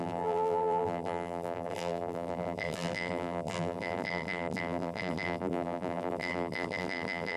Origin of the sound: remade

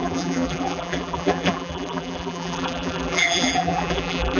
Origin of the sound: remade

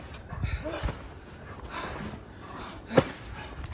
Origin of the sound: remade